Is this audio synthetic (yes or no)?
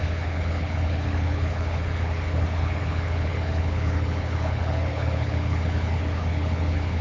yes